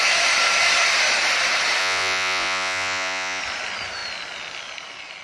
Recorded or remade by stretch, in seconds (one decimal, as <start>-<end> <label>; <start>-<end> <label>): 0.0-1.8 recorded; 1.8-3.4 remade; 3.4-5.2 recorded